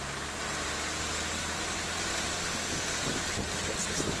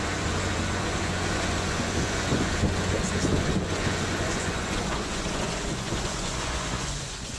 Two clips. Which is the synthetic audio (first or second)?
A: second